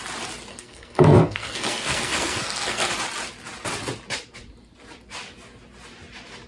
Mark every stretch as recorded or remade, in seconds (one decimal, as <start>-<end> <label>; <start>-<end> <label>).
0.0-0.5 recorded; 0.5-2.9 remade; 2.9-6.5 recorded